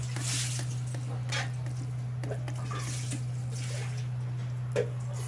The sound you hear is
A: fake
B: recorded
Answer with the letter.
B